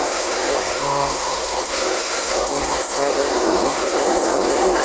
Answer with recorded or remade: remade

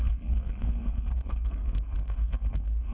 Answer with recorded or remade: remade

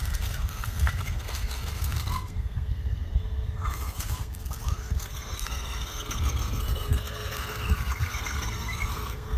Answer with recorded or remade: remade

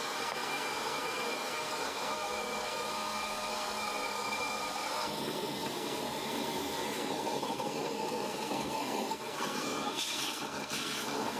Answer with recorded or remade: remade